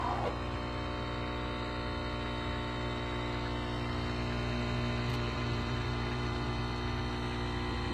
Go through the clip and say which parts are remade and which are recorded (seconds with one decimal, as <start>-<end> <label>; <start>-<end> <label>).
0.0-5.1 recorded; 5.1-6.6 remade; 6.6-7.9 recorded

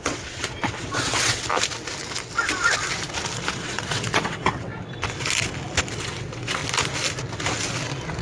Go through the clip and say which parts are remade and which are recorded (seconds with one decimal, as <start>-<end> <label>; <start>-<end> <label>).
0.0-1.4 remade; 1.4-3.5 recorded; 3.5-4.7 remade; 4.7-6.0 recorded; 6.0-6.6 remade; 6.6-8.2 recorded

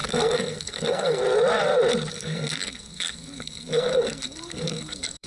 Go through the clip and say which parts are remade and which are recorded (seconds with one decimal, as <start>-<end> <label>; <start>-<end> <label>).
0.0-1.2 remade; 1.2-2.1 recorded; 2.1-5.3 remade

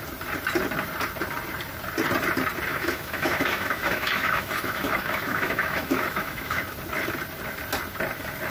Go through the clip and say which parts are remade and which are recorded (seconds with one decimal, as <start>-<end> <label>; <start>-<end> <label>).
0.0-2.7 recorded; 2.7-6.6 remade; 6.6-8.5 recorded

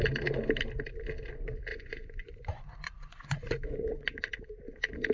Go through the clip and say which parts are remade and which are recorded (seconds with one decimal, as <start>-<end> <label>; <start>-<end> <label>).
0.0-1.7 recorded; 1.7-4.3 remade; 4.3-5.1 recorded

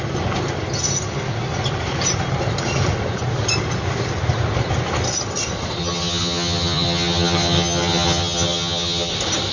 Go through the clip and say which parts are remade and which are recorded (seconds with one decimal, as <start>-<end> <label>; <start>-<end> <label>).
0.0-5.8 recorded; 5.8-9.1 remade; 9.1-9.5 recorded

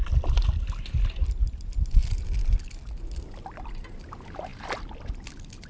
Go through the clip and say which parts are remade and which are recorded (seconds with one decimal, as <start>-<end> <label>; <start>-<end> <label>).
0.0-5.7 recorded

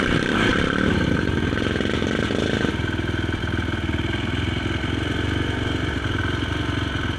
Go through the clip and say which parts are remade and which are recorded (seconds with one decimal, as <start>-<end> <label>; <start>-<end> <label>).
0.0-0.5 recorded; 0.5-1.3 remade; 1.3-7.2 recorded